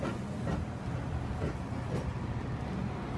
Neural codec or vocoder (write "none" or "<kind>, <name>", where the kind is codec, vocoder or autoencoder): none